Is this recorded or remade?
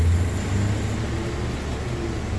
recorded